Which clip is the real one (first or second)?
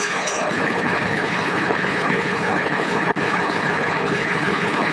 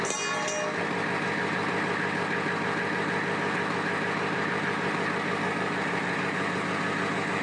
second